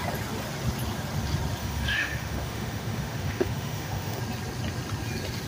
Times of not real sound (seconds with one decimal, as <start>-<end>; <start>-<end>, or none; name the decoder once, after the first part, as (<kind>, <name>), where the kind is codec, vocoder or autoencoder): 1.6-4.2 (autoencoder, DAC-VAE)